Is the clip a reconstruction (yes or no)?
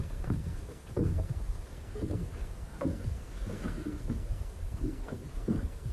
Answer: yes